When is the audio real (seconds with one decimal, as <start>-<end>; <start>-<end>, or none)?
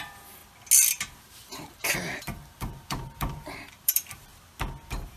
0.4-1.2; 4.3-5.2